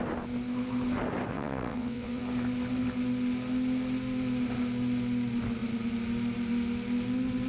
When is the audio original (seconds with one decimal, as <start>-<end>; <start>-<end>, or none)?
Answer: 0.0-1.3; 2.2-7.5